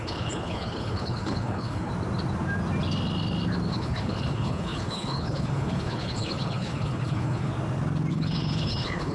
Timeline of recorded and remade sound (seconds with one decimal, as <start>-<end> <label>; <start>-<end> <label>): 0.0-1.9 remade; 1.9-3.7 recorded; 3.7-7.5 remade; 7.5-8.1 recorded; 8.1-9.1 remade